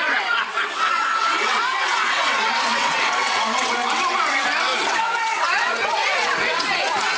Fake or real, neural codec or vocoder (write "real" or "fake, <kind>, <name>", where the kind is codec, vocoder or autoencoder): fake, vocoder, WaveNeXt